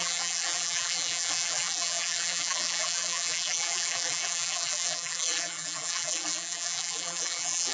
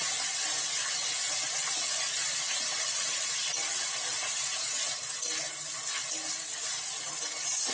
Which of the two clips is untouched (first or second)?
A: second